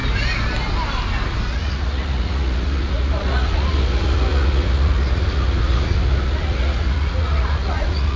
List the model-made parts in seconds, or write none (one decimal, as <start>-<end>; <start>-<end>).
1.5-8.2